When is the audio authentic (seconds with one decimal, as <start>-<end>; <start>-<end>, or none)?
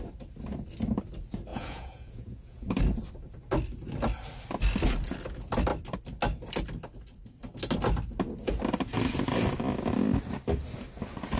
0.0-1.5; 2.8-11.4